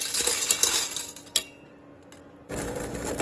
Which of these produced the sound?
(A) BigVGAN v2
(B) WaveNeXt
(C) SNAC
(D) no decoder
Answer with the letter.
D